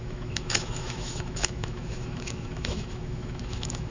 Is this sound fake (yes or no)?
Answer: yes